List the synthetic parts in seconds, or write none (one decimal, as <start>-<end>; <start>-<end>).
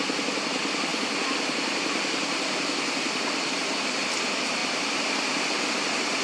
none